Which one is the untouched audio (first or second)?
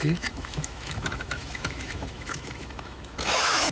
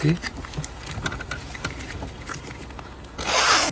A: second